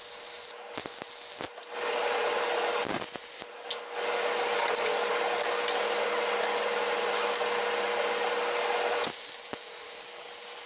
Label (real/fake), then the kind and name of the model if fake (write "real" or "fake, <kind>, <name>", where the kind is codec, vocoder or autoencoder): real